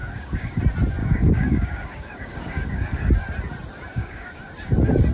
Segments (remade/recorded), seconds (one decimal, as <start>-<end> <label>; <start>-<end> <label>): 0.0-0.6 remade; 0.6-1.0 recorded; 1.0-3.1 remade; 3.1-3.9 recorded; 3.9-4.5 remade; 4.5-5.1 recorded